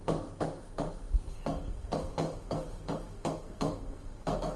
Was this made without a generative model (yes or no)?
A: no